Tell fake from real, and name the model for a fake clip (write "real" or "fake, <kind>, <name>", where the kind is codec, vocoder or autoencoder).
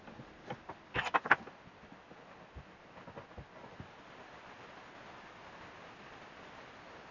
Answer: real